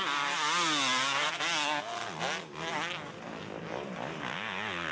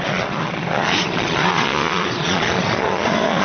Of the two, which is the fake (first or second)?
second